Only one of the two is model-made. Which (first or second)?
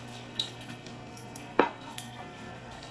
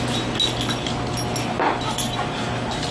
first